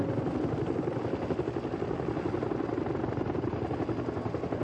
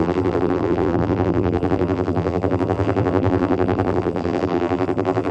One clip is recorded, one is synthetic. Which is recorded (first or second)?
first